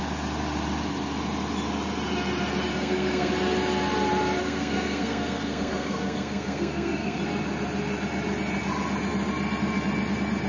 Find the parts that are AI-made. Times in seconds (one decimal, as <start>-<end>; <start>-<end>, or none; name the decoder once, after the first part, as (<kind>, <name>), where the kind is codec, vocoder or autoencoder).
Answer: 2.7-3.3 (codec, SNAC); 4.4-7.2